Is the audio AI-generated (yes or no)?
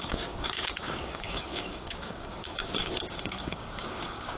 yes